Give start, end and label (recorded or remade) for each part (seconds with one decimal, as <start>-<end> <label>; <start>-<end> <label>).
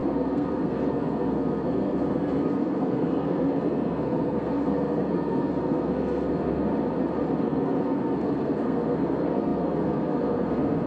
0.0-6.7 remade; 6.7-7.4 recorded; 7.4-10.9 remade